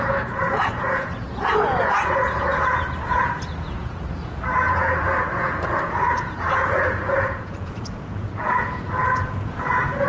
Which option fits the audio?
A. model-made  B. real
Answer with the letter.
A